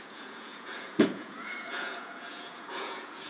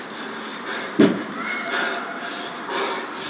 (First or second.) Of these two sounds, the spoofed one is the first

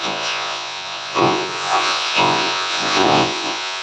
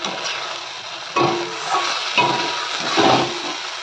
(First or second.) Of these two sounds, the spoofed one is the first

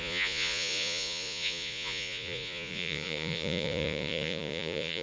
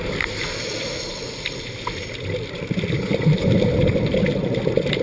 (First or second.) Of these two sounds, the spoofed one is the first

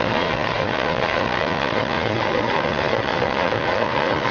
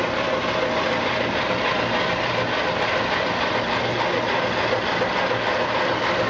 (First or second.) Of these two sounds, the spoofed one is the first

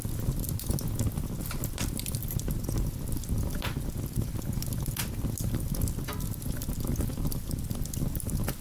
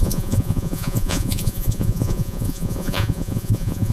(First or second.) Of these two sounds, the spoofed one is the second